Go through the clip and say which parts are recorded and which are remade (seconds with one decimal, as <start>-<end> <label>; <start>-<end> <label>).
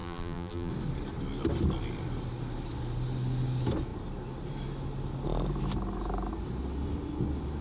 0.0-0.7 remade; 0.7-7.6 recorded